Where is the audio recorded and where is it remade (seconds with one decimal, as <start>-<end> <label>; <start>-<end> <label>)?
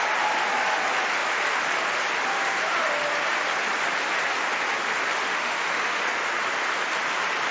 0.0-5.3 recorded; 5.3-6.0 remade; 6.0-7.5 recorded